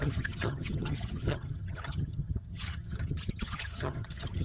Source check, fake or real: fake